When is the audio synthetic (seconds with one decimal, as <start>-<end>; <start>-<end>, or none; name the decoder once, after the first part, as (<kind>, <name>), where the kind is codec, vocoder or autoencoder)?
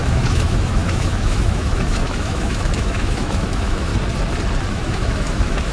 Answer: 0.0-3.9 (autoencoder, DAC-VAE); 4.7-5.7